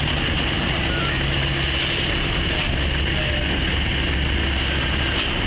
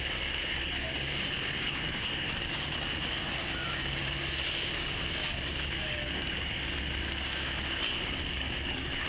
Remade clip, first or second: second